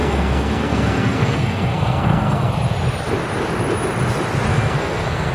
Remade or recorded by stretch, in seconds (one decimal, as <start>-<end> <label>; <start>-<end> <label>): 0.0-2.5 remade; 2.5-4.5 recorded; 4.5-5.3 remade